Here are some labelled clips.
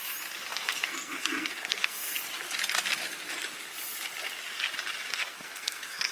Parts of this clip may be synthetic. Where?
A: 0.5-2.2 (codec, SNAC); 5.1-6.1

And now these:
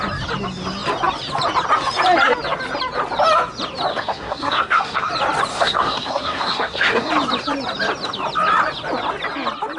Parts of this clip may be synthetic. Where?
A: 3.9-5.1 (codec, SNAC); 5.5-7.1

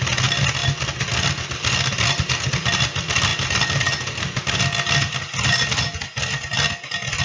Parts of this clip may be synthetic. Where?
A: none

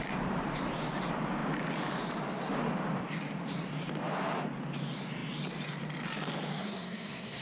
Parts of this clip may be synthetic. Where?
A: 6.6-7.4 (codec, SNAC)

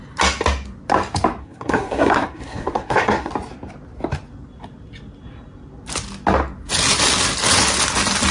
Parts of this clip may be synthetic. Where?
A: 1.4-3.3 (codec, SNAC)

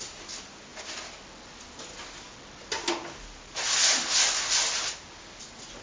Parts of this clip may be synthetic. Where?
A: none

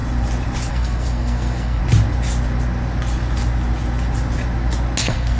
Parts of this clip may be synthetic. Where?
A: 0.7-1.8 (codec, SNAC); 5.0-5.4